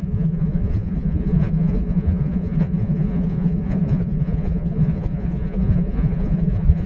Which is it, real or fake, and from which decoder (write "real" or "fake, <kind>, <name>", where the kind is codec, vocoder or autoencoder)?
fake, vocoder, Vocos